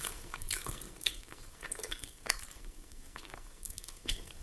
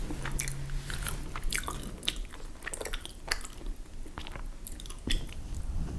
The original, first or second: second